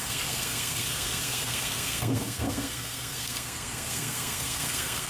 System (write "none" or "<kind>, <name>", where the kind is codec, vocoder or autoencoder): codec, SNAC